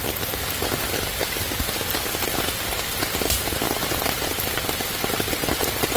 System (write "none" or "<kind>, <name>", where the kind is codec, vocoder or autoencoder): none